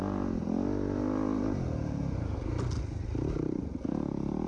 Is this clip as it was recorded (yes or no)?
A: yes